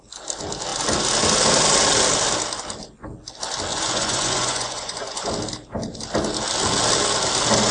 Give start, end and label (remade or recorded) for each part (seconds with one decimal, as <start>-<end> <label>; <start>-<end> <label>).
0.0-3.7 recorded; 3.7-5.3 remade; 5.3-7.7 recorded